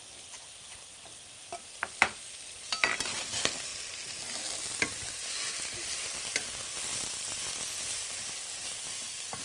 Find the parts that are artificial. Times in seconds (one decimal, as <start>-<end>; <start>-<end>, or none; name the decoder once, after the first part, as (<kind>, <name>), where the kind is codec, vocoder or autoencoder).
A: 0.0-3.7 (vocoder, BigVGAN v2); 4.9-9.4